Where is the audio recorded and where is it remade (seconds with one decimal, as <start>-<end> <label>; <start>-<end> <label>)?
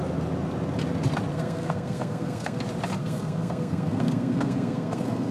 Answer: 0.0-1.3 recorded; 1.3-2.6 remade; 2.6-3.0 recorded; 3.0-5.3 remade